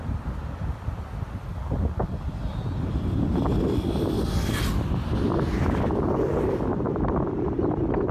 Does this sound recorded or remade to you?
recorded